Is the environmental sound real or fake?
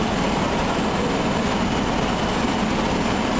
real